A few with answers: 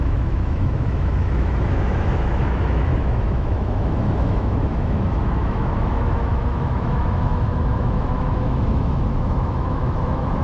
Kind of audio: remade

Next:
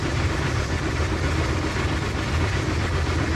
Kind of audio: recorded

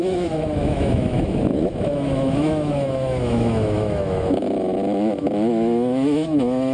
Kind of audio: remade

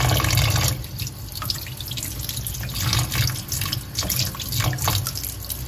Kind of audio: recorded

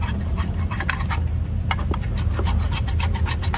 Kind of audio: recorded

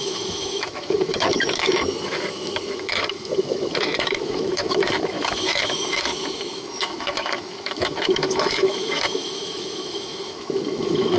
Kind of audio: remade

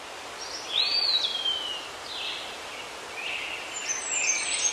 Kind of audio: recorded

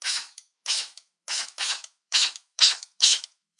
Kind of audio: remade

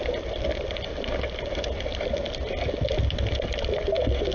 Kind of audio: recorded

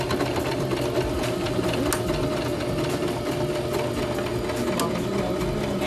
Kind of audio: recorded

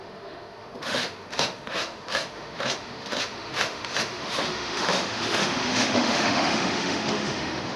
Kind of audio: remade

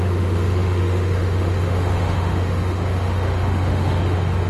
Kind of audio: remade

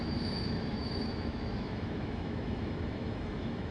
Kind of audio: remade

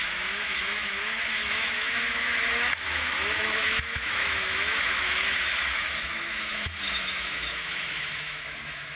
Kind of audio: remade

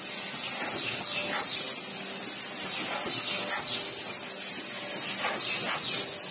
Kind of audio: recorded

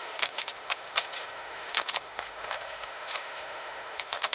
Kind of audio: remade